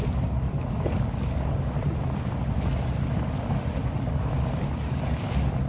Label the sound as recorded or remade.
recorded